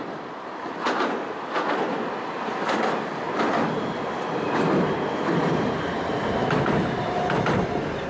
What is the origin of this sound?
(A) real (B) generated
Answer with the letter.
A